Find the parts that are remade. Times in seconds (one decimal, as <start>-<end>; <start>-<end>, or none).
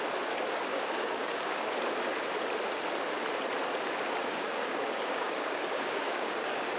0.7-1.8; 4.2-6.8